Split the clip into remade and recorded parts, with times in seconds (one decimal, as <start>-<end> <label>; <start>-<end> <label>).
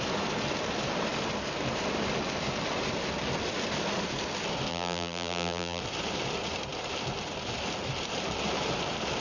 0.0-4.7 recorded; 4.7-5.8 remade; 5.8-9.2 recorded